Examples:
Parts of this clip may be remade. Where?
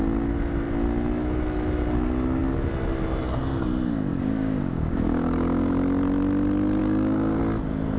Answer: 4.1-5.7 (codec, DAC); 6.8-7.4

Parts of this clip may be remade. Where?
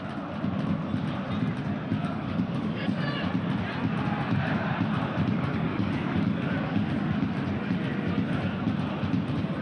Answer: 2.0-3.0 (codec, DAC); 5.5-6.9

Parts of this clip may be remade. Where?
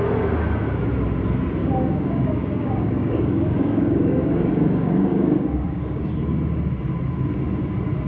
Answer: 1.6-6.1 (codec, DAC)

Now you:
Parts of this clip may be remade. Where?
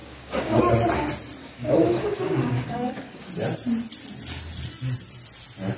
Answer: 0.0-0.6 (codec, DAC); 1.4-3.3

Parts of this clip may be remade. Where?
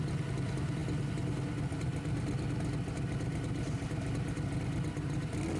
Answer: none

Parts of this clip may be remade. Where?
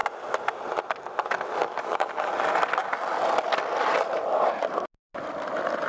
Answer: 1.6-2.3 (codec, DAC)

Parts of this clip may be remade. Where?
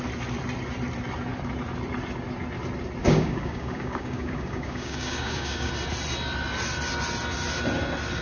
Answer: 3.0-5.7 (codec, DAC)